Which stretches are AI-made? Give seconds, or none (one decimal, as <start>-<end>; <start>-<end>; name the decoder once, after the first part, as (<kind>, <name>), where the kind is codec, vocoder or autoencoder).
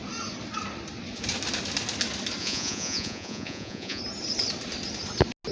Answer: 2.4-4.0 (vocoder, Vocos)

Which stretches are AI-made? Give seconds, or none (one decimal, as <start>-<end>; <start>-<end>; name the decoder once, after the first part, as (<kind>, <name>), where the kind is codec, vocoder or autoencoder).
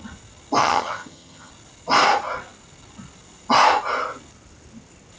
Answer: 0.6-1.5 (vocoder, HiFi-GAN)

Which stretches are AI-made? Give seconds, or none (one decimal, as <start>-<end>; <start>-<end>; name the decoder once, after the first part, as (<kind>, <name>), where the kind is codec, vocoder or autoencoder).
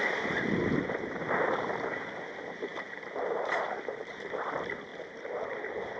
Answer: none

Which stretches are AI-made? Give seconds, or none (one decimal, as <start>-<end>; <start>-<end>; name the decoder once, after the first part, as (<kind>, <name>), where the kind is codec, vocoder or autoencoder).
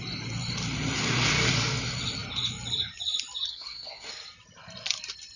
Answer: 3.5-4.1 (codec, SNAC)